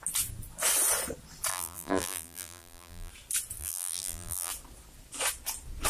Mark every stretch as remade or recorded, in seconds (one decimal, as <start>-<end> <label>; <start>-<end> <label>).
0.0-1.5 recorded; 1.5-3.1 remade; 3.1-3.6 recorded; 3.6-4.5 remade; 4.5-5.9 recorded